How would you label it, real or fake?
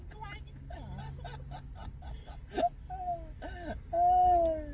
real